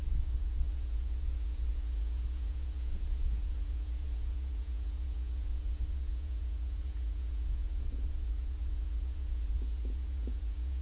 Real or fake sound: fake